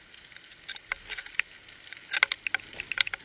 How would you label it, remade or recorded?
recorded